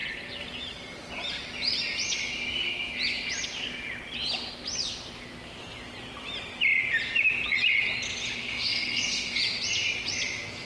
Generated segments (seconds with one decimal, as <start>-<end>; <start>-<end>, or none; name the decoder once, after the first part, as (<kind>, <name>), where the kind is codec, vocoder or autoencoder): 8.4-9.4 (codec, SNAC)